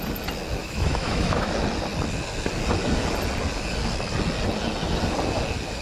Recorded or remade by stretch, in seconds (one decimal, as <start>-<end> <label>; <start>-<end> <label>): 0.0-0.6 recorded; 0.6-1.5 remade; 1.5-5.8 recorded

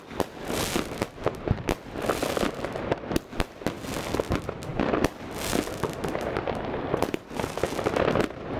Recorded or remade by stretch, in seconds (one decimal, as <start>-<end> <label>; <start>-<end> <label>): 0.0-8.6 recorded

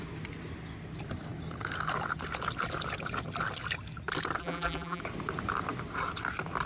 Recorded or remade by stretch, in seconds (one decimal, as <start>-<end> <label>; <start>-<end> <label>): 0.0-4.4 recorded; 4.4-5.0 remade; 5.0-6.7 recorded

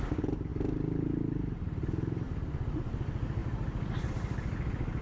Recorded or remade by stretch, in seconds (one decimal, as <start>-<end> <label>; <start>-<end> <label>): 0.0-5.0 recorded

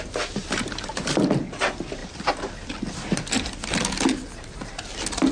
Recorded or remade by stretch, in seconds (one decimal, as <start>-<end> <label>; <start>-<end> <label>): 0.0-0.4 recorded; 0.4-1.4 remade; 1.4-2.0 recorded; 2.0-2.5 remade; 2.5-4.1 recorded; 4.1-4.8 remade; 4.8-5.3 recorded

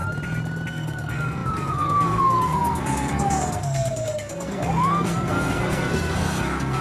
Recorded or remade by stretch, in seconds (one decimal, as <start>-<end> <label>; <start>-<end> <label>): 0.0-0.7 recorded; 0.7-6.8 remade

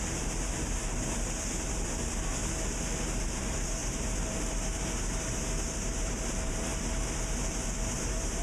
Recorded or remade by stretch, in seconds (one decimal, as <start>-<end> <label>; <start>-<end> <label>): 0.0-2.4 remade; 2.4-3.2 recorded; 3.2-6.7 remade; 6.7-8.0 recorded; 8.0-8.4 remade